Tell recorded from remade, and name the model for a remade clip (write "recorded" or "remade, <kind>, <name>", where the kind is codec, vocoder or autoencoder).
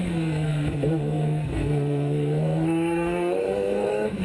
remade, codec, SNAC